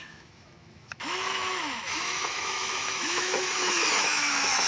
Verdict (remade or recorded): remade